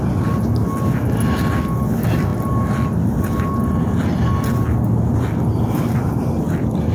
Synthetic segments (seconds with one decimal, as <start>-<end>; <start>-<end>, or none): none